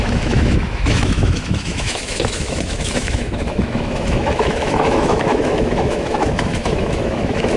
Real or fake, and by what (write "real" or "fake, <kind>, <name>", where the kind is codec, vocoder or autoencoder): fake, autoencoder, DAC-VAE